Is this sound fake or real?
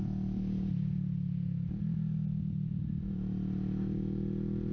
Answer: real